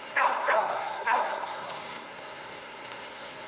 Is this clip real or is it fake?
fake